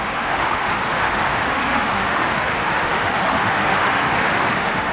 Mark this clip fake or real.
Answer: fake